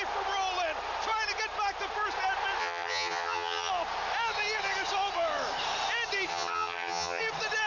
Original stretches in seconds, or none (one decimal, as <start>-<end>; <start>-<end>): 0.0-2.6; 3.7-6.3; 7.2-7.7